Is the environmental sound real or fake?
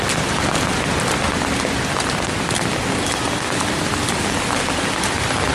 real